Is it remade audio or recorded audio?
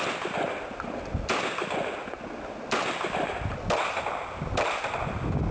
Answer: recorded